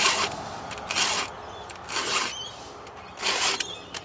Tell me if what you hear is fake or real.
real